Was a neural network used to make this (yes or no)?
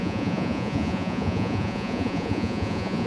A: yes